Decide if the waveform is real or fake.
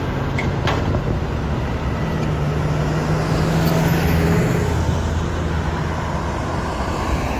real